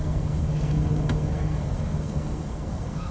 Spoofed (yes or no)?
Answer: yes